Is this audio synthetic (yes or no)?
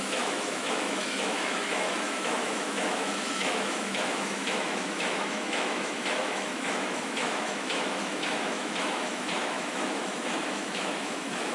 yes